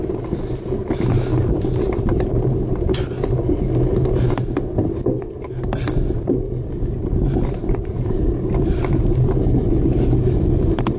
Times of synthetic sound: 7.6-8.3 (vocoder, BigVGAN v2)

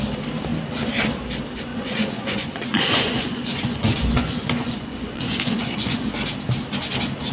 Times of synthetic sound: 1.7-6.1 (vocoder, Vocos)

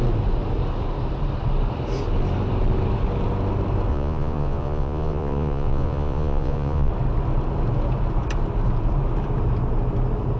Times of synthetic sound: 3.9-6.9 (vocoder, Vocos)

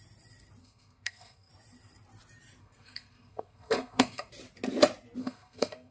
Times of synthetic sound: 0.6-1.5 (codec, SNAC); 2.6-4.3; 5.2-5.9

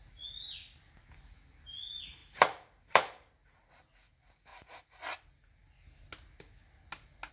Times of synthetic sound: 2.2-3.7 (vocoder, BigVGAN v2)

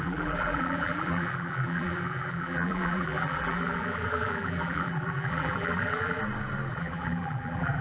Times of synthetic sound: 0.0-6.2 (vocoder, BigVGAN v2); 6.7-7.8

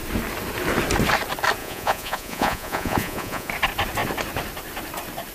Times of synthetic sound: 1.6-3.5 (vocoder, Vocos)

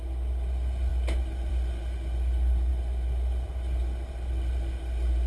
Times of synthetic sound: none